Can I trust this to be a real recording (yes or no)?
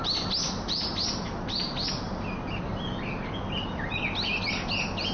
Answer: yes